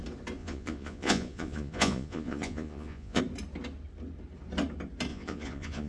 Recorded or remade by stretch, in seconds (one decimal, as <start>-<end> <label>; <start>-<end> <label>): 0.0-0.4 recorded; 0.4-3.2 remade; 3.2-5.1 recorded; 5.1-5.9 remade

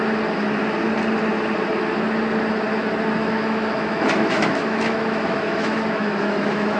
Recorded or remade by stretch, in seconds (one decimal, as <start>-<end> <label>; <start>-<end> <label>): 0.0-3.2 recorded; 3.2-6.8 remade

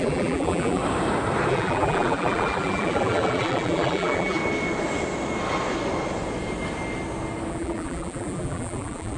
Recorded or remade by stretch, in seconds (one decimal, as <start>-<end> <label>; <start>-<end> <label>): 0.0-0.8 remade; 0.8-1.5 recorded; 1.5-4.4 remade; 4.4-7.5 recorded; 7.5-9.2 remade

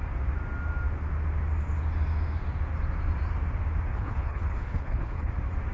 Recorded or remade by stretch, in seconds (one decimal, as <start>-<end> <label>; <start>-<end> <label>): 0.0-3.9 recorded; 3.9-5.3 remade; 5.3-5.7 recorded

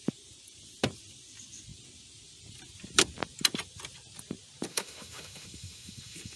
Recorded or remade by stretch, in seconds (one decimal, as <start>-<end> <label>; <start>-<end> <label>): 0.0-4.7 recorded; 4.7-6.4 remade

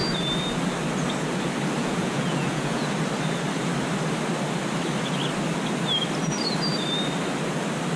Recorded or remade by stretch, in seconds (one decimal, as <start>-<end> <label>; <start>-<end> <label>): 0.0-1.8 recorded; 1.8-2.8 remade; 2.8-8.0 recorded

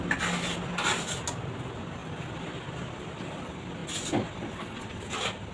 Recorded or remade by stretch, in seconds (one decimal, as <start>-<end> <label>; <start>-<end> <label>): 0.0-5.5 recorded

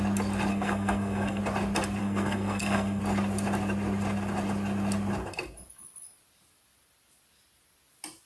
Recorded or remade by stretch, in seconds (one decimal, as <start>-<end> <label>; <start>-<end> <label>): 0.0-0.5 recorded; 0.5-1.4 remade; 1.4-2.0 recorded; 2.0-3.0 remade; 3.0-8.3 recorded